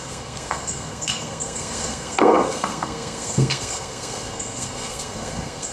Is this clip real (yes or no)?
no